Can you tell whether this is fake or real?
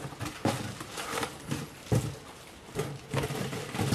real